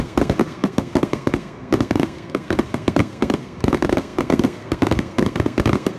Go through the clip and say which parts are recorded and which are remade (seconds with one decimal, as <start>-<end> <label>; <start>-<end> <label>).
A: 0.0-6.0 remade

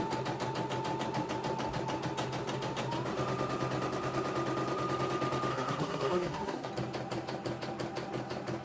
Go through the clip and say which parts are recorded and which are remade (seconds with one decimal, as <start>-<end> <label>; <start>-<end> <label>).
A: 0.0-5.5 recorded; 5.5-6.7 remade; 6.7-8.6 recorded

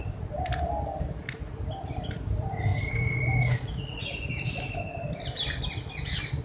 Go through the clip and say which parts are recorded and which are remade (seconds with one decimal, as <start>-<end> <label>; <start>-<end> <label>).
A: 0.0-0.6 remade; 0.6-2.7 recorded; 2.7-3.2 remade; 3.2-6.4 recorded